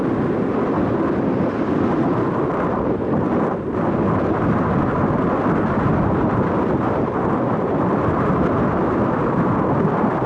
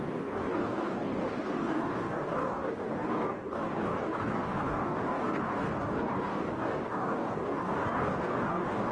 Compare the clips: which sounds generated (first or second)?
second